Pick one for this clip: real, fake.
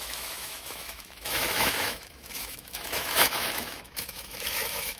fake